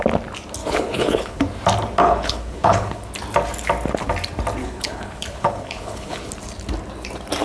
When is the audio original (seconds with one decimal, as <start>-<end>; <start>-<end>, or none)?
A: 0.0-0.6; 1.4-2.0; 3.1-4.6; 6.3-7.4